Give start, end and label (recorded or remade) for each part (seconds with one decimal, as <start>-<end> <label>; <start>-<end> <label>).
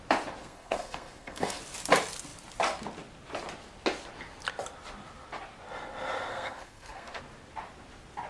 0.0-0.4 recorded; 0.4-1.6 remade; 1.6-6.3 recorded; 6.3-7.2 remade; 7.2-8.3 recorded